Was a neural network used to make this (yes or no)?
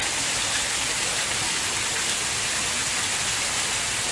no